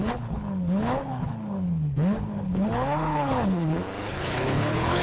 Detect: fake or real fake